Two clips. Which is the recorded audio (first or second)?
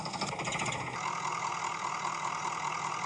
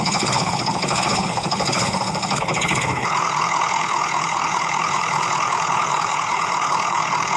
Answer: first